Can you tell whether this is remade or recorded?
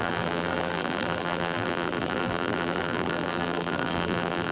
remade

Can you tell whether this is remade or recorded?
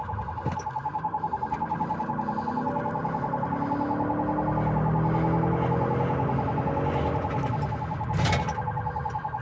recorded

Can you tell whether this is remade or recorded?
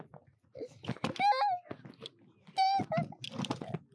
recorded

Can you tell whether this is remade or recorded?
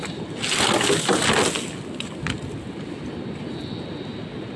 recorded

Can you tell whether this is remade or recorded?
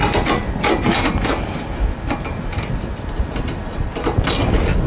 recorded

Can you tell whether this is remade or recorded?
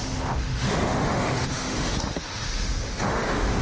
remade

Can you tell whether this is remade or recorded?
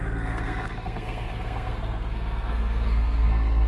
remade